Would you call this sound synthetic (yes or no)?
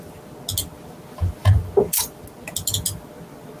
no